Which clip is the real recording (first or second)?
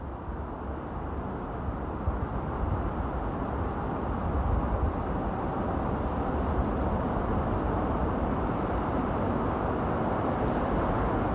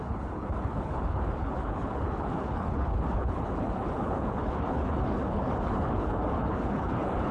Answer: first